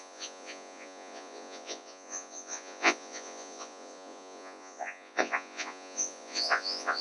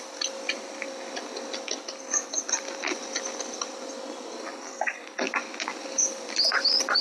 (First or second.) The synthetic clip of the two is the first